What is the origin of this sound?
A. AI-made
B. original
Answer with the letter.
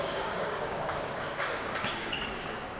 A